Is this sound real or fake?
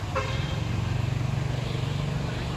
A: real